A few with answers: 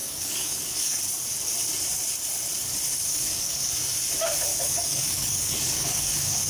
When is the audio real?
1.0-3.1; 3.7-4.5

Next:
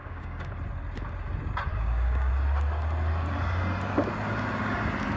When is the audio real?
0.5-1.7; 2.3-5.2